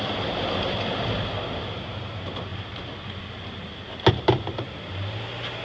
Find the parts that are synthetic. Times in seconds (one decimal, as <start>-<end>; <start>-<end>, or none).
2.5-4.1